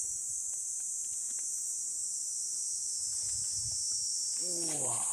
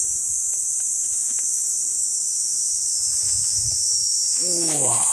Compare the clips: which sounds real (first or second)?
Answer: first